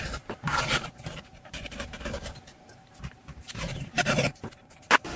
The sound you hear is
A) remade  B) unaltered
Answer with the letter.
A